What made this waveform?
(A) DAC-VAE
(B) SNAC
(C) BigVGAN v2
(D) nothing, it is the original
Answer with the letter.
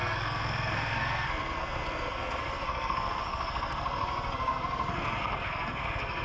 B